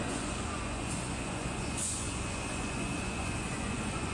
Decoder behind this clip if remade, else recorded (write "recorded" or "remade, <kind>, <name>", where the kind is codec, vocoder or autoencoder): remade, vocoder, Vocos